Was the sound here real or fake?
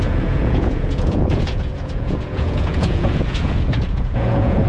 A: fake